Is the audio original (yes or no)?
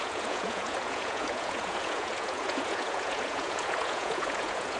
no